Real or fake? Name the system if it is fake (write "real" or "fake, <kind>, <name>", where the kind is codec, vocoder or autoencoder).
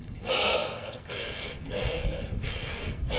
fake, codec, SNAC